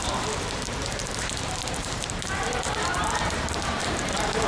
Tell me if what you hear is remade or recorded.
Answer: remade